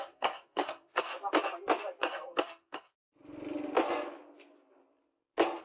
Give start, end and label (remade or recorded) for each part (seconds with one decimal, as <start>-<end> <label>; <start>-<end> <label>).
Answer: 0.0-1.1 remade; 1.1-2.0 recorded; 2.0-3.0 remade; 3.0-5.6 recorded